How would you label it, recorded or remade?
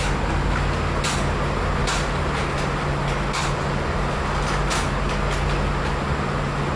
recorded